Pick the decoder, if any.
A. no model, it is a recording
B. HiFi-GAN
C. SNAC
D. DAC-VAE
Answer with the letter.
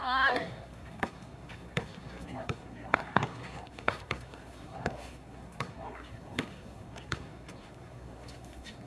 C